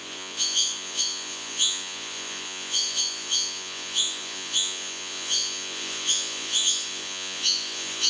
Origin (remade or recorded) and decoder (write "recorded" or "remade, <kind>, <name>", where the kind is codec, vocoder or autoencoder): remade, vocoder, Vocos